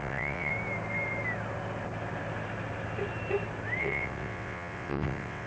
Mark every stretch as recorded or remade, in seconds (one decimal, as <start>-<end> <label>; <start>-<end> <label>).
0.0-0.5 remade; 0.5-3.8 recorded; 3.8-5.5 remade